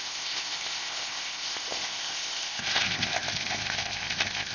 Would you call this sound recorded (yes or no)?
no